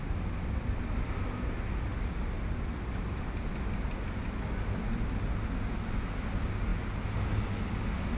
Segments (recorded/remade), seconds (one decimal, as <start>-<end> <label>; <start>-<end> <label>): 0.0-8.2 recorded